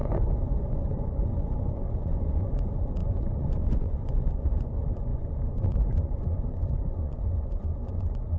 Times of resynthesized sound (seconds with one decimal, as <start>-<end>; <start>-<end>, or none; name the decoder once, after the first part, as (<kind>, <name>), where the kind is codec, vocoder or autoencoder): 0.0-8.4 (vocoder, Vocos)